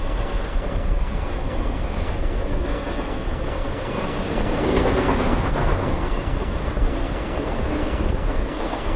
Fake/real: fake